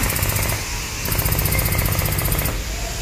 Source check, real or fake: real